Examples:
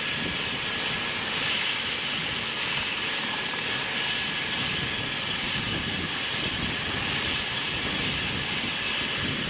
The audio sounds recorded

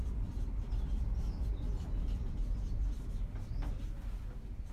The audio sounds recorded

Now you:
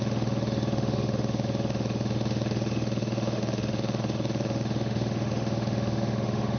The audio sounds remade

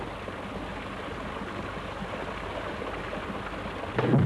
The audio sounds recorded